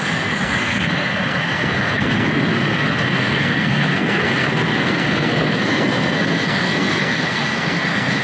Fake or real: fake